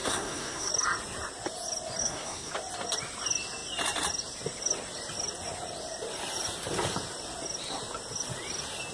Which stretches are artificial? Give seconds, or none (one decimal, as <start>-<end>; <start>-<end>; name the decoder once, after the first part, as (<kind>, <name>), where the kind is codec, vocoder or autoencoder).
0.0-0.7 (codec, SNAC); 2.0-2.5